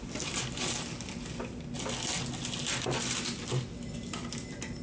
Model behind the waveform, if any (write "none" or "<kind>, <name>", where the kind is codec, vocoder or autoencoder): none